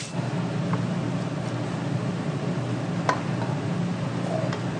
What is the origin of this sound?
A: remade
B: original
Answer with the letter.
B